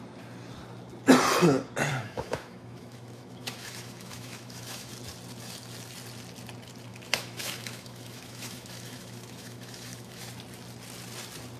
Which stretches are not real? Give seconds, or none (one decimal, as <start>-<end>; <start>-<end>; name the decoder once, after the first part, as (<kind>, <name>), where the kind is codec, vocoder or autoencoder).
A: 1.9-4.9 (autoencoder, DAC-VAE); 6.9-10.2